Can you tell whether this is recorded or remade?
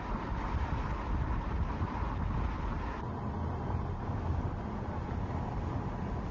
recorded